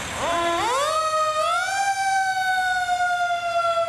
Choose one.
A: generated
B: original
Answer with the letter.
B